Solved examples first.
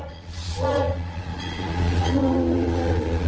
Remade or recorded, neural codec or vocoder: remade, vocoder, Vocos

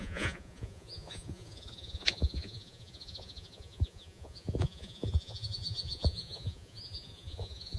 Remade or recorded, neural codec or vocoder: remade, vocoder, Vocos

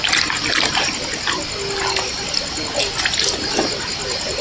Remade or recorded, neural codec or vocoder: recorded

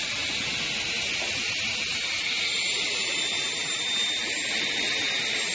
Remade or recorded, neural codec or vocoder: recorded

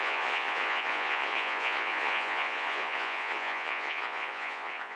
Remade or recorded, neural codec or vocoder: remade, vocoder, Vocos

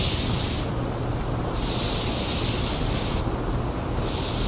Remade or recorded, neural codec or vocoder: recorded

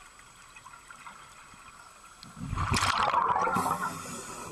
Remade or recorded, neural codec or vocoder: recorded